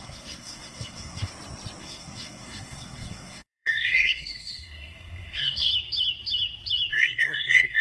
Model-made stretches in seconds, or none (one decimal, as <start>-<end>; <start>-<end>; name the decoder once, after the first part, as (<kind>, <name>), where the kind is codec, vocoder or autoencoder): 0.0-1.3 (codec, SNAC); 1.8-5.7; 6.9-7.8